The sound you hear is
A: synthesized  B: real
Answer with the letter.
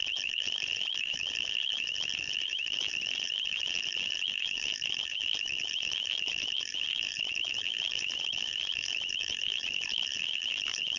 A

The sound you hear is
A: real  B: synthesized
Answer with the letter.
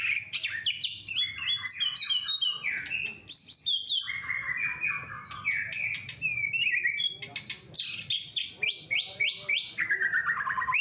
A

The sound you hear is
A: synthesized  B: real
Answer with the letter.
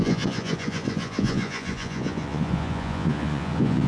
A